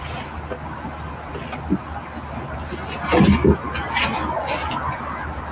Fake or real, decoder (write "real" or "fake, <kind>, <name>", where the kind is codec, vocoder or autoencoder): real